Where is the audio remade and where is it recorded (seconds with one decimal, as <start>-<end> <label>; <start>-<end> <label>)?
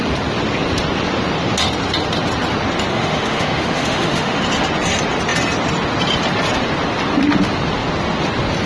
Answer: 0.0-2.9 recorded; 2.9-4.4 remade; 4.4-8.7 recorded